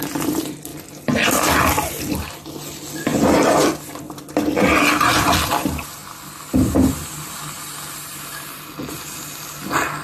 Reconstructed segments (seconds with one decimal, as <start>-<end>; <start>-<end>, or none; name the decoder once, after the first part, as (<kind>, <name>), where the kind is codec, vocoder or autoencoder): 3.1-5.5 (vocoder, BigVGAN v2)